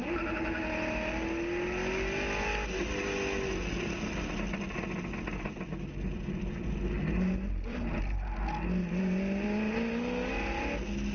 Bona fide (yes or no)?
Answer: yes